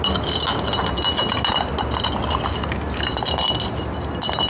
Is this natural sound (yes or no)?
yes